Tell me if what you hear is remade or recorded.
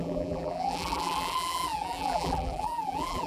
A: remade